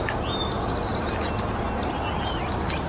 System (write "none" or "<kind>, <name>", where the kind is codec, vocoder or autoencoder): none